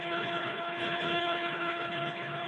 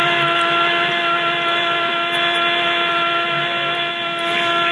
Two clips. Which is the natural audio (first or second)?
second